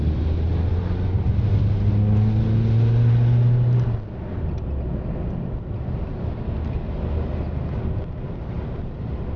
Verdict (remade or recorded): recorded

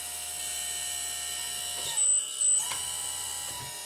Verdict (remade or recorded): recorded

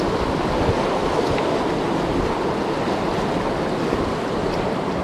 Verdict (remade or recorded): recorded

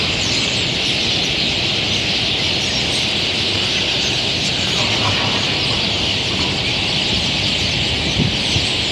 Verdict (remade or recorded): recorded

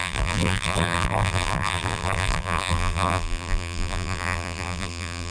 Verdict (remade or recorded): remade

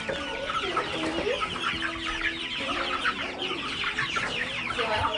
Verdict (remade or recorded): remade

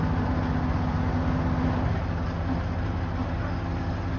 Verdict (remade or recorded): recorded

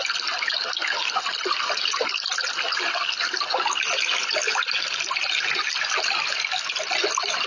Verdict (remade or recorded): recorded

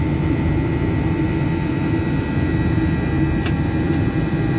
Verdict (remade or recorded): remade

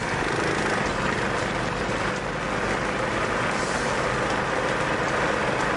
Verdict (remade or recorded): recorded